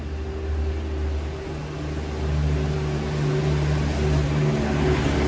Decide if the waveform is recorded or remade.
recorded